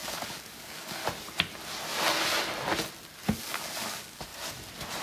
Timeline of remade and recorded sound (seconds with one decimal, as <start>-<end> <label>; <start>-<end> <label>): 0.0-1.0 remade; 1.0-3.4 recorded; 3.4-4.3 remade; 4.3-5.0 recorded